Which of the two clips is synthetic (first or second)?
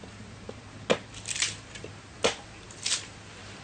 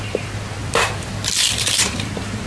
second